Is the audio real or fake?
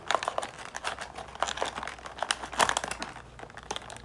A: real